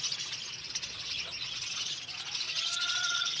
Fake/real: fake